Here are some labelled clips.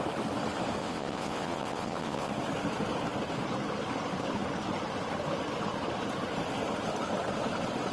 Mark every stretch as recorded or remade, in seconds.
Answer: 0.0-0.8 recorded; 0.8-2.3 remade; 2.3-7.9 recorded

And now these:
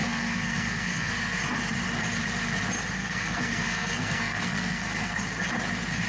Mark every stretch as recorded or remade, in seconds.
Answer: 0.0-1.1 remade; 1.1-3.0 recorded; 3.0-5.1 remade; 5.1-6.1 recorded

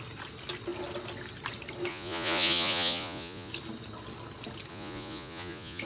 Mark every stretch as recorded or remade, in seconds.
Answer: 0.0-1.9 recorded; 1.9-3.5 remade; 3.5-4.7 recorded; 4.7-5.8 remade

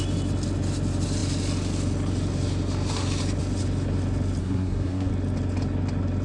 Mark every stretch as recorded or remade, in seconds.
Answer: 0.0-4.4 recorded; 4.4-5.1 remade; 5.1-6.2 recorded

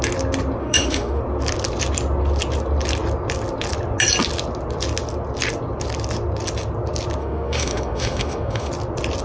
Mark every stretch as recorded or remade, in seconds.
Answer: 0.0-0.6 recorded; 0.6-1.2 remade; 1.2-7.2 recorded; 7.2-8.7 remade; 8.7-9.2 recorded

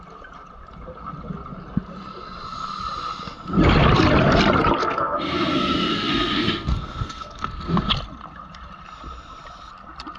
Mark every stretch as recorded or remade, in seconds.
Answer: 0.0-4.8 recorded; 4.8-7.9 remade; 7.9-10.2 recorded

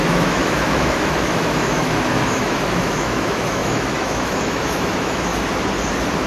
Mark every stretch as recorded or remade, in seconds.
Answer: 0.0-5.3 remade; 5.3-6.3 recorded